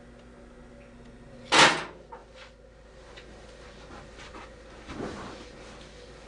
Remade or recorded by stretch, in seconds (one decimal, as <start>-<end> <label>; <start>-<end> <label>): 0.0-6.3 recorded